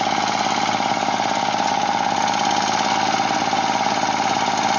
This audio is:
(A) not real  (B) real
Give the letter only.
B